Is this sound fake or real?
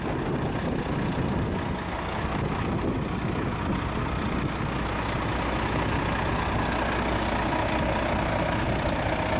real